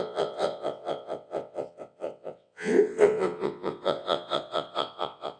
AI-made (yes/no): yes